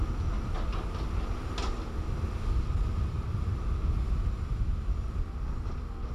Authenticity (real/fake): real